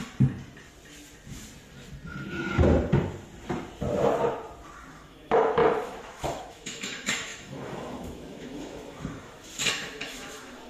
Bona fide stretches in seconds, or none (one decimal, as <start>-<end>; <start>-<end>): 0.0-4.9